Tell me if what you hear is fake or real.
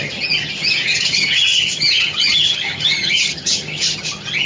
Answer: fake